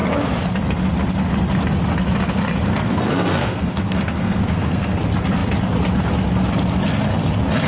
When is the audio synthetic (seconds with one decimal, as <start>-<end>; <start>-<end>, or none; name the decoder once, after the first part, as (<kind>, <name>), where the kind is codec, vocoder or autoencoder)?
2.7-5.0 (codec, SNAC)